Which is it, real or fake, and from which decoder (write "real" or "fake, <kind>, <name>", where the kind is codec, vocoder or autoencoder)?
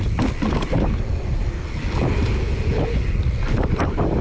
real